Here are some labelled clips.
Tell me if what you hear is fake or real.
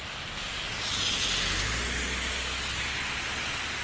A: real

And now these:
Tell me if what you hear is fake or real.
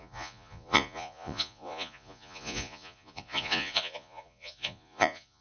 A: fake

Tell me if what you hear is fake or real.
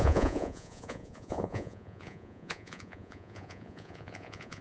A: fake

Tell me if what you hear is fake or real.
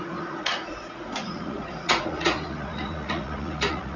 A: fake